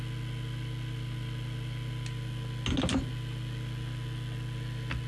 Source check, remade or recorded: recorded